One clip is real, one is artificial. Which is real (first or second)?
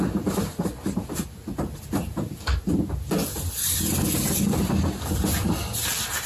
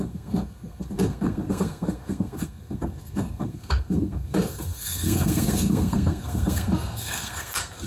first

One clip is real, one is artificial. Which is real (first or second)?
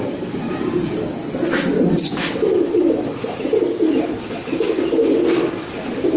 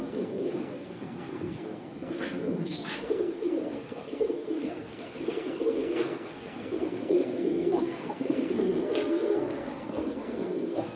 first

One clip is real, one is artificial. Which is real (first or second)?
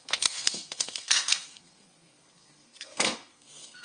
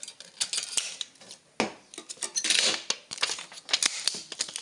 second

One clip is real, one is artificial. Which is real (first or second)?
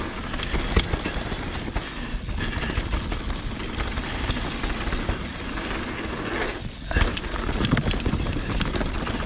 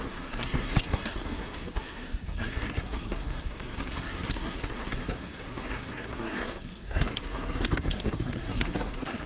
first